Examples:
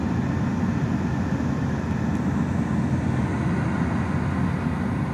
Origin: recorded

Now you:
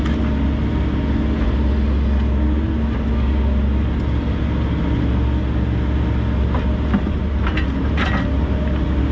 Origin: recorded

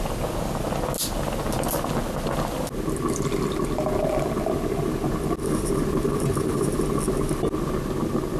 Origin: recorded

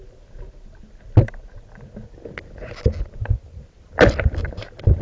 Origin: recorded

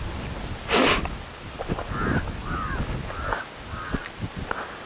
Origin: recorded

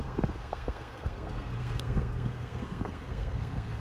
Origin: remade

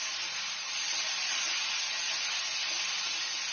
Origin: recorded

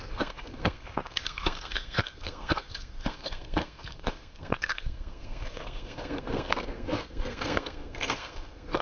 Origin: remade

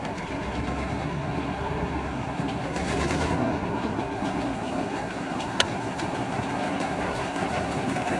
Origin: remade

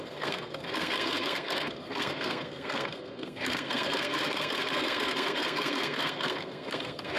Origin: remade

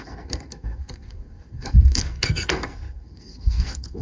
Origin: remade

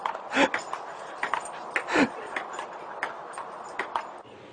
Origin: recorded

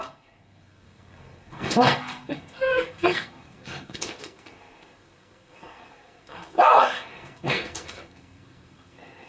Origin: remade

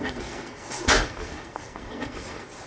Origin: remade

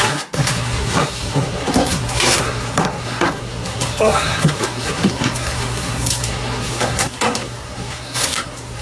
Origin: remade